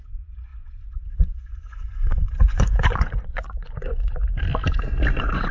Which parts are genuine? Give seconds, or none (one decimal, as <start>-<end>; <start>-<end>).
4.2-5.1